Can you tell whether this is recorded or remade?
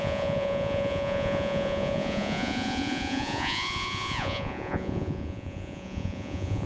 remade